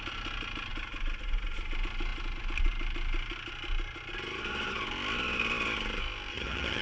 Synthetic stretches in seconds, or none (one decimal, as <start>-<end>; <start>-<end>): 6.3-6.8